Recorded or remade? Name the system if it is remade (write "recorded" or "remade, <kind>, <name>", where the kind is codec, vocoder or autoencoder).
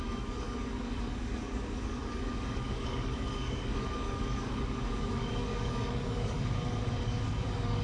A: remade, codec, DAC